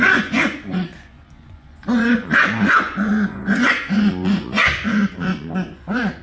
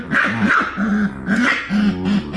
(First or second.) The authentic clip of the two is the second